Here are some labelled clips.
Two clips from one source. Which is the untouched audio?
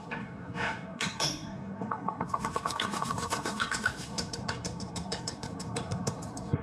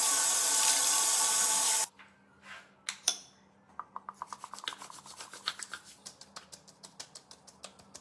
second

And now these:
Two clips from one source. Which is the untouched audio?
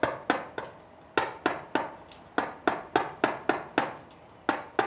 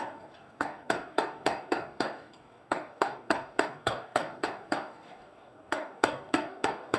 first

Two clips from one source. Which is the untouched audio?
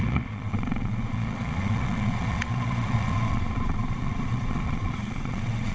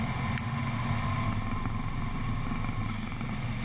second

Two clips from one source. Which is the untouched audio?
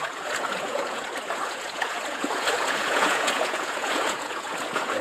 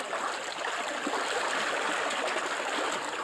second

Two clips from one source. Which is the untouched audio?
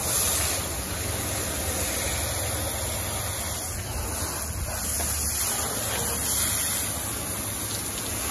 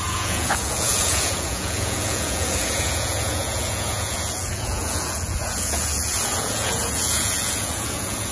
first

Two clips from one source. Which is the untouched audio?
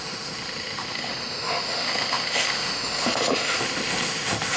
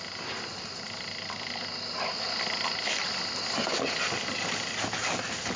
second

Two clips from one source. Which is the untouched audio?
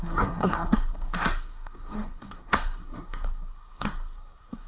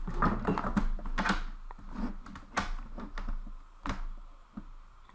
second